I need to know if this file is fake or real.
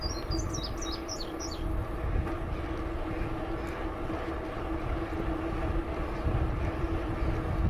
real